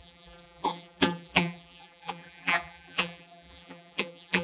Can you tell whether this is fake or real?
fake